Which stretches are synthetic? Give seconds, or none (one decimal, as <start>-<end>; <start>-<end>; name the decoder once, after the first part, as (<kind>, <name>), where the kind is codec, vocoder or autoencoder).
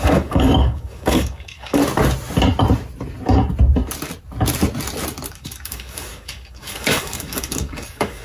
0.0-1.8 (codec, DAC); 5.3-8.2